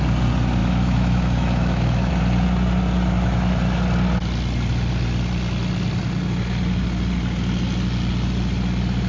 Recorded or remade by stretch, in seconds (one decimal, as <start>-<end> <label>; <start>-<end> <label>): 0.0-0.6 recorded; 0.6-2.1 remade; 2.1-9.1 recorded